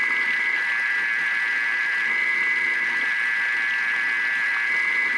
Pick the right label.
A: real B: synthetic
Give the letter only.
A